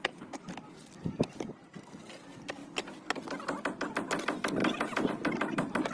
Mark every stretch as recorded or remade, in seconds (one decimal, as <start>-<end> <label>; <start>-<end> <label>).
0.0-4.6 recorded; 4.6-5.1 remade; 5.1-5.9 recorded